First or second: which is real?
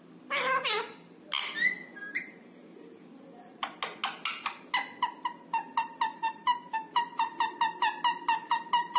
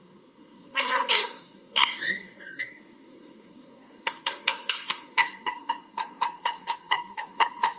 first